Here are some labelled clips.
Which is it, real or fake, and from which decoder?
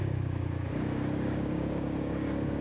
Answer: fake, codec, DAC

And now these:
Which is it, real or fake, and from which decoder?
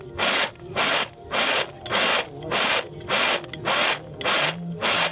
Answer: real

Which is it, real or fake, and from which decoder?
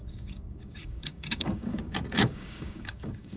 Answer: fake, codec, DAC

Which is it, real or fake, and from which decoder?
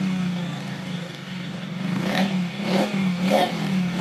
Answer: fake, codec, DAC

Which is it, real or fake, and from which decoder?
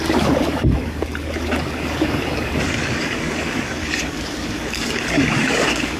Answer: fake, codec, DAC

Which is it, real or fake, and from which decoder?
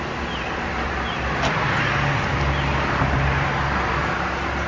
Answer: real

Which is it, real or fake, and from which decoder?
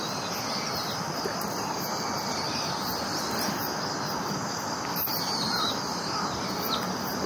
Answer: real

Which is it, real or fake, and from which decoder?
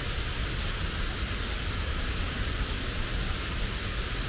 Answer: real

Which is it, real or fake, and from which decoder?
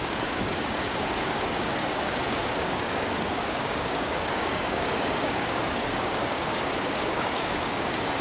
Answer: fake, codec, DAC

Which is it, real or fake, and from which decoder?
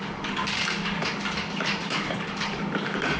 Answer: fake, codec, DAC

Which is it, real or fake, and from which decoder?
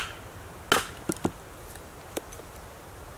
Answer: real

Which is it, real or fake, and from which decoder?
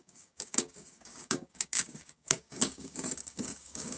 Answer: fake, codec, DAC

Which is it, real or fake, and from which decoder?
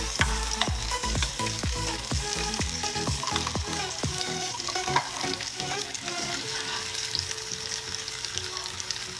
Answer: fake, codec, DAC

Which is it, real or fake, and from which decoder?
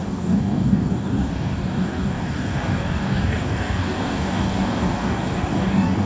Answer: fake, codec, DAC